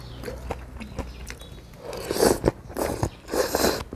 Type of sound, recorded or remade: recorded